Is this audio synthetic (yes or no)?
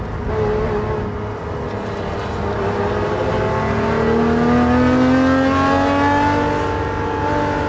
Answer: no